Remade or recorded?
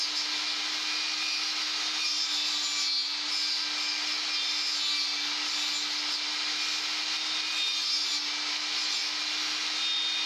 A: recorded